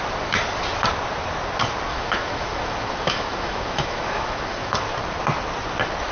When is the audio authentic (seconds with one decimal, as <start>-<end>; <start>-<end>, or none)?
0.0-1.9; 4.9-6.1